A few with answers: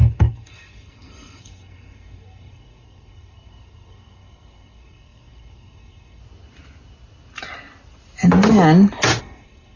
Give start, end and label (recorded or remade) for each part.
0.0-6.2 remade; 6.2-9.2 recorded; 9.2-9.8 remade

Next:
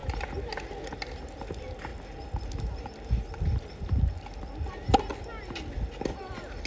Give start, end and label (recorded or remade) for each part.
0.0-6.7 recorded

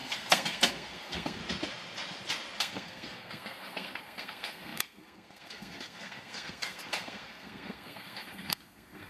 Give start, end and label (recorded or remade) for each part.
0.0-1.4 remade; 1.4-2.6 recorded; 2.6-9.1 remade

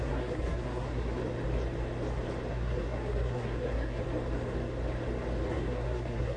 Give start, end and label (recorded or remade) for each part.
0.0-1.2 remade; 1.2-2.5 recorded; 2.5-4.0 remade; 4.0-5.5 recorded; 5.5-6.4 remade

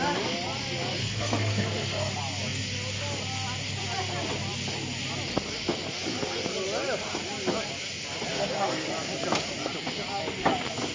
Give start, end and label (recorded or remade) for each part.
0.0-1.0 recorded; 1.0-2.1 remade; 2.1-8.3 recorded; 8.3-8.9 remade; 8.9-10.9 recorded

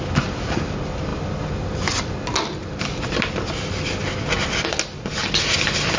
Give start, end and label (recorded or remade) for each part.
0.0-6.0 recorded